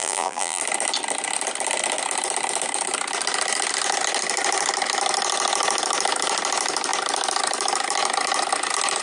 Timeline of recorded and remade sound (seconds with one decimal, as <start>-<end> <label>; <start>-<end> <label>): 0.0-0.6 remade; 0.6-9.0 recorded

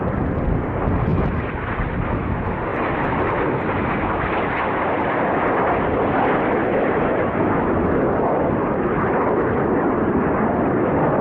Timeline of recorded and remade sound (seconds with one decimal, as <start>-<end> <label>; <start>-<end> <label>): 0.0-11.2 recorded

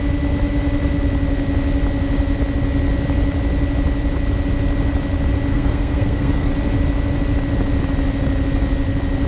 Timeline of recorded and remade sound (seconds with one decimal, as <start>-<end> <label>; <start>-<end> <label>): 0.0-5.5 recorded; 5.5-6.5 remade; 6.5-9.3 recorded

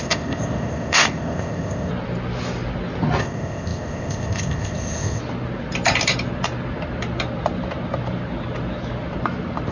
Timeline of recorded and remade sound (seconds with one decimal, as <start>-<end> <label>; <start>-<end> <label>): 0.0-1.9 remade; 1.9-3.2 recorded; 3.2-5.2 remade; 5.2-9.7 recorded